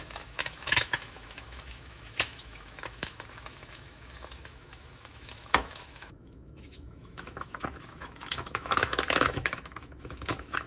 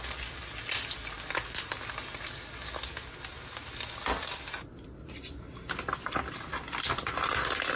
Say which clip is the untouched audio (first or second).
second